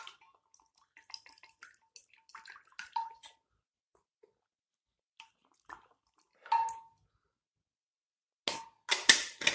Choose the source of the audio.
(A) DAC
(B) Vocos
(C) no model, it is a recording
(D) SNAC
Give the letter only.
C